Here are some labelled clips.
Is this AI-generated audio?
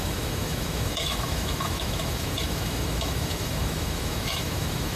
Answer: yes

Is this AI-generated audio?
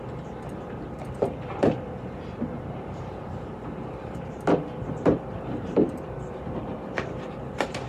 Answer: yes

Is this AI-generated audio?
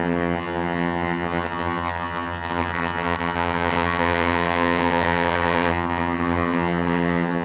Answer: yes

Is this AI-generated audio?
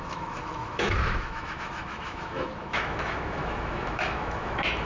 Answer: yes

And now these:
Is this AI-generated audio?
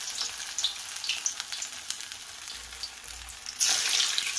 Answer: no